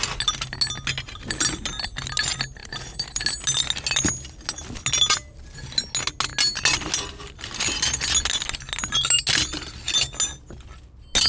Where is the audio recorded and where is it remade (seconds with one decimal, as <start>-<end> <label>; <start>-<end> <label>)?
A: 0.0-2.6 recorded; 2.6-3.2 remade; 3.2-11.3 recorded